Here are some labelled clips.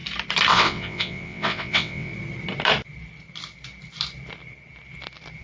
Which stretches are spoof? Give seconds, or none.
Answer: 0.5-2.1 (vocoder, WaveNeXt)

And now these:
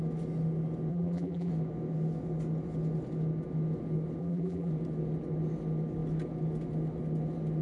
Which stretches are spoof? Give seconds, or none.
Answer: 0.9-1.5 (vocoder, BigVGAN v2); 4.2-4.7

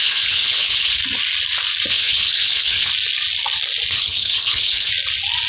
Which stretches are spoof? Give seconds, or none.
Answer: 0.0-1.0 (codec, HILCodec); 1.9-2.9; 3.9-4.9

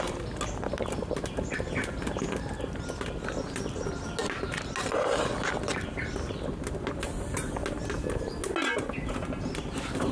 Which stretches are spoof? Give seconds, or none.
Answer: none